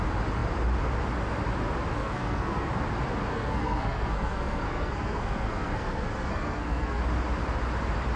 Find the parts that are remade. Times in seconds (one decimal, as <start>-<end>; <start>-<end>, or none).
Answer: 2.0-2.7; 3.3-7.0